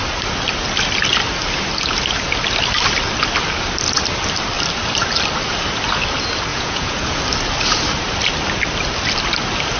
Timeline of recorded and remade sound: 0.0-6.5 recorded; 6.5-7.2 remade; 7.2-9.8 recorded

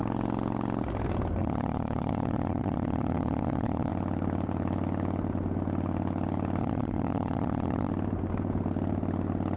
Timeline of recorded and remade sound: 0.0-1.4 recorded; 1.4-3.9 remade; 3.9-6.6 recorded; 6.6-7.9 remade; 7.9-9.6 recorded